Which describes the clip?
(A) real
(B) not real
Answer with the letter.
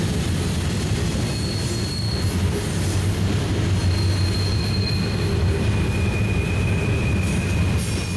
A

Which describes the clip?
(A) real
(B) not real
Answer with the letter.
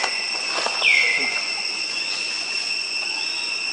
B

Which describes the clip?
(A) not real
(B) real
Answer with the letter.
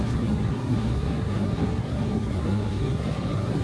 A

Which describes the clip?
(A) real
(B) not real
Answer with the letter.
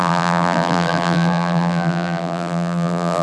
B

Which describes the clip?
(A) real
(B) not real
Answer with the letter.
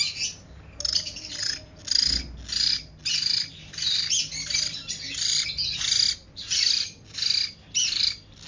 A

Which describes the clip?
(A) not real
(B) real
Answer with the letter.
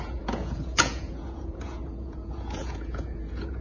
A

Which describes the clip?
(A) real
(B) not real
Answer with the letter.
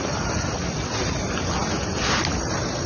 A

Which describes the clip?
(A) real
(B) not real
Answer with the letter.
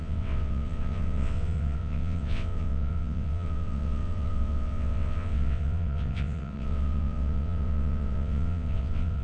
B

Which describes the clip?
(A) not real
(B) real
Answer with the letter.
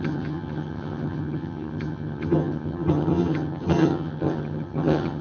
A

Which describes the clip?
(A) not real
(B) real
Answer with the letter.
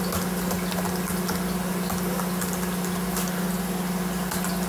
B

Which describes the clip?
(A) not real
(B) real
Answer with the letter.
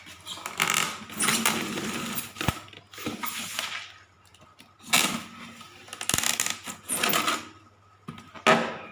B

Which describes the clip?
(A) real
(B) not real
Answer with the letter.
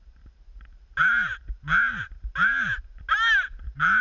A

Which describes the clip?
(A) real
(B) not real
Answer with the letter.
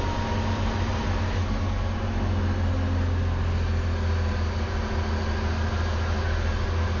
A